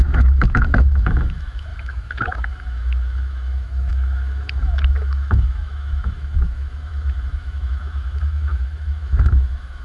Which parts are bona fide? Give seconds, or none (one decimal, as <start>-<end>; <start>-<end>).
none